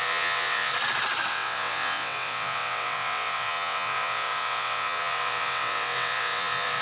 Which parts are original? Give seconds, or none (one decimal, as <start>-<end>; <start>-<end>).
0.7-1.3